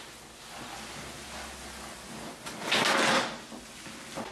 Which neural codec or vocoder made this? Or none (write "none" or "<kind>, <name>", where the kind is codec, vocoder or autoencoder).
none